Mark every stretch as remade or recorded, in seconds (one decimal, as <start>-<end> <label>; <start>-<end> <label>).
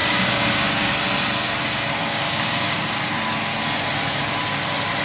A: 0.0-0.9 remade; 0.9-2.0 recorded; 2.0-2.9 remade; 2.9-5.0 recorded